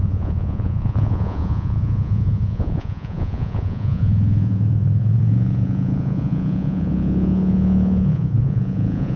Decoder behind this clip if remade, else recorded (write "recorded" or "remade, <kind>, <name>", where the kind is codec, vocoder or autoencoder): remade, vocoder, Vocos